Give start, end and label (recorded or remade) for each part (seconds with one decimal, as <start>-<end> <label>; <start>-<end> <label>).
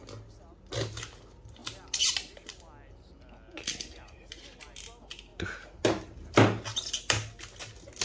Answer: 0.0-8.0 recorded